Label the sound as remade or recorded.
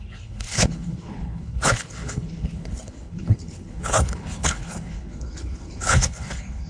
remade